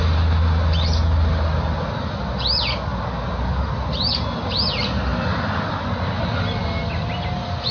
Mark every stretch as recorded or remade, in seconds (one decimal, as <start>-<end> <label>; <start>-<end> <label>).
0.0-7.7 recorded